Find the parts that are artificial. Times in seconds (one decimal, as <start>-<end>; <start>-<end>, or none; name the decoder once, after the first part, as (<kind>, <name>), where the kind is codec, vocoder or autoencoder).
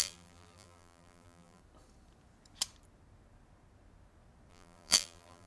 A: 0.0-1.6 (vocoder, BigVGAN v2); 4.5-5.5